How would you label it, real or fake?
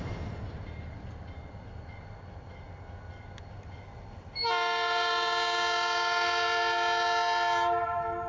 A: real